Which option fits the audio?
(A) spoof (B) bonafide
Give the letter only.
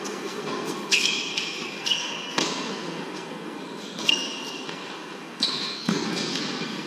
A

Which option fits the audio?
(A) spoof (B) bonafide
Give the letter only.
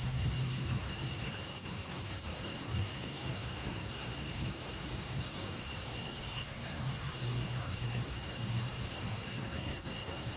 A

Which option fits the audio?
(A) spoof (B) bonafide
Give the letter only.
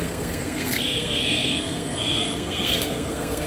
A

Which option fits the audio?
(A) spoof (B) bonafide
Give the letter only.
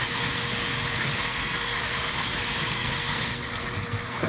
A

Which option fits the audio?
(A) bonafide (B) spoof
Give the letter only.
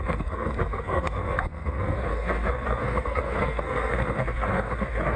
B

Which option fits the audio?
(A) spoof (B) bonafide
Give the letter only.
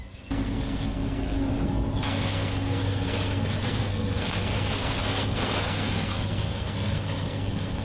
A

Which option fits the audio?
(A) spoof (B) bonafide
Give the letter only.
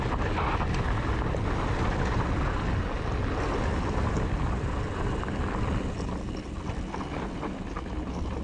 B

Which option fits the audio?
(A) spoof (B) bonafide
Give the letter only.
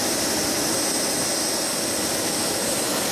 B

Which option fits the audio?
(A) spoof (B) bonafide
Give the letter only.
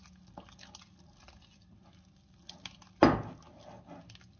B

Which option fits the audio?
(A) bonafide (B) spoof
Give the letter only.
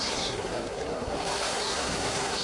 B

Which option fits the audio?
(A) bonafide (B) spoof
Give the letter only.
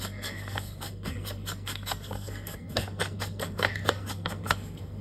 B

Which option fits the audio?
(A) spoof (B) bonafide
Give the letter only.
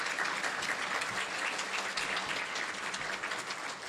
B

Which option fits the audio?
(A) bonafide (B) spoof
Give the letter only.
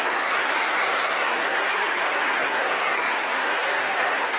B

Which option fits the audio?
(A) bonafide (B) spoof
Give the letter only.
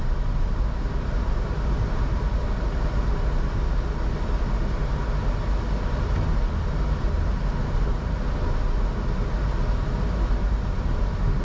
A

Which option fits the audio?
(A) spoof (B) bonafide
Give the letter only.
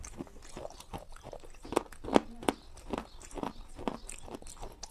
B